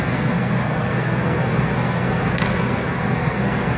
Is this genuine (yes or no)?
no